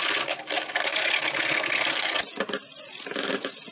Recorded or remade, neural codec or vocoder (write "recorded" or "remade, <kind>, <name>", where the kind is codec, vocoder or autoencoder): recorded